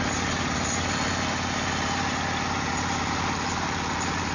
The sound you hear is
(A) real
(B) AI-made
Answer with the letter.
A